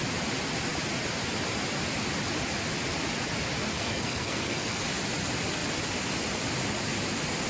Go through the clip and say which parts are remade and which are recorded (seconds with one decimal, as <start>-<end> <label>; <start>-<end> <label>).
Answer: 0.0-3.7 recorded; 3.7-4.8 remade; 4.8-7.5 recorded